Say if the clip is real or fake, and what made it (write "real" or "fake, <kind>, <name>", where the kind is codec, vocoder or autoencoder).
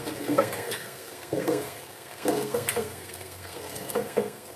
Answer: fake, codec, SNAC